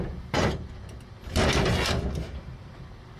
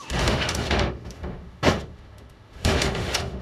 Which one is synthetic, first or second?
second